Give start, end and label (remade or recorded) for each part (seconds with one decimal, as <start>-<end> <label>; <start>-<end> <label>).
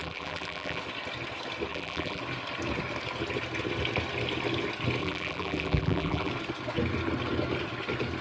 0.0-0.8 remade; 0.8-1.7 recorded; 1.7-2.2 remade; 2.2-5.0 recorded; 5.0-6.3 remade; 6.3-8.2 recorded